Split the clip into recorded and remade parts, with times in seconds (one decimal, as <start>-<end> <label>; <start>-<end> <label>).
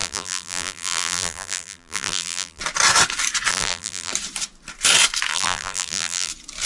0.0-2.6 remade; 2.6-3.5 recorded; 3.5-4.1 remade; 4.1-5.3 recorded; 5.3-6.3 remade; 6.3-6.7 recorded